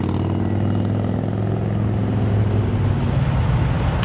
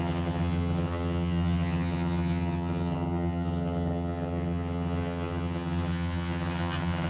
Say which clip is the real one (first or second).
first